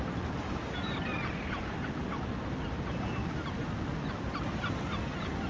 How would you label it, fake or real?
real